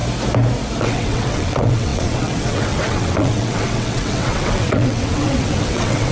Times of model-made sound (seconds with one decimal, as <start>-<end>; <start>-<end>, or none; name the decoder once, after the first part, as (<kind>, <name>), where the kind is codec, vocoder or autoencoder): 0.8-6.1 (vocoder, WaveNeXt)